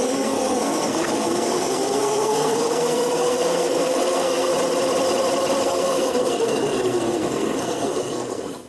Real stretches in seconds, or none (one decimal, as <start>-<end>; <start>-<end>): 4.5-5.6